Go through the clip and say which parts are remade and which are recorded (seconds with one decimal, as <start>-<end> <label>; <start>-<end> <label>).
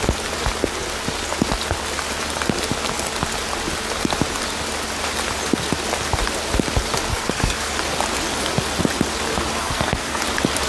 0.0-7.1 recorded; 7.1-7.7 remade; 7.7-9.6 recorded; 9.6-10.2 remade; 10.2-10.7 recorded